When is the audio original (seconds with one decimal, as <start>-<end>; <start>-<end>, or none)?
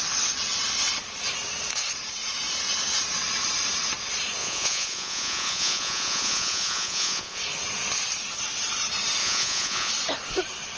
0.0-4.4; 7.4-9.2; 9.9-10.8